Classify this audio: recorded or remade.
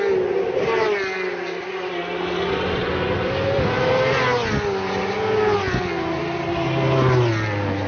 recorded